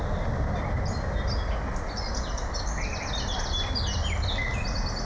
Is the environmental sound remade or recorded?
recorded